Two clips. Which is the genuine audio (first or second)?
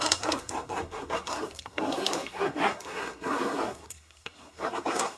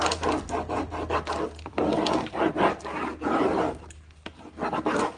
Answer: second